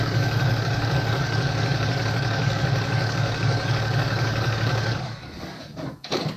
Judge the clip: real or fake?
fake